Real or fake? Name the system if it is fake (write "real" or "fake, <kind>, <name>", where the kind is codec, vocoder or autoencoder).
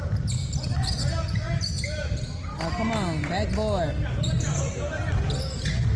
real